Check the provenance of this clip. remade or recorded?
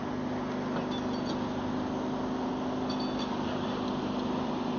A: recorded